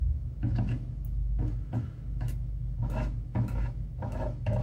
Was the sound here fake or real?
fake